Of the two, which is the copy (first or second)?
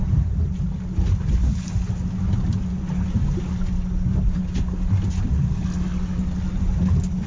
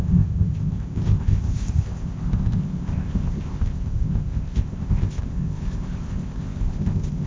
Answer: second